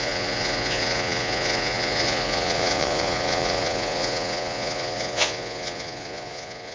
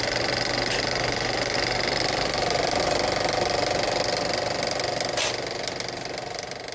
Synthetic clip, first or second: first